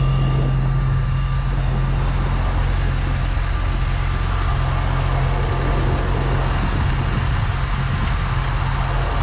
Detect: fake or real real